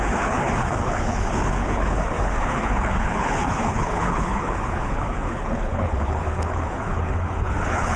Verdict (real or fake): fake